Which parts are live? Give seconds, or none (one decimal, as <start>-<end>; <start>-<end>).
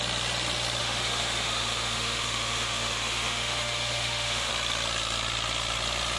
0.0-0.8; 4.5-6.2